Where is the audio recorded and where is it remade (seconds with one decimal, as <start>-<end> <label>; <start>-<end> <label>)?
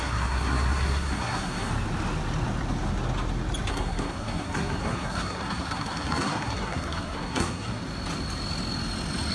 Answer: 0.0-1.7 remade; 1.7-3.7 recorded; 3.7-7.8 remade; 7.8-9.3 recorded